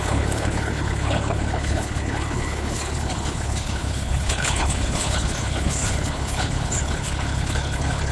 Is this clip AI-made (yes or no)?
yes